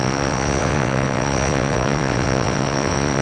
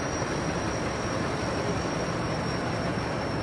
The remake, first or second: first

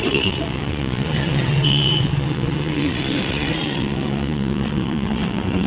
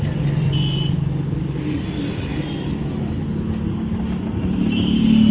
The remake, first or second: first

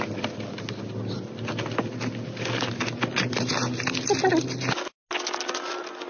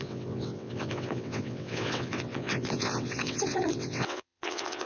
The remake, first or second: second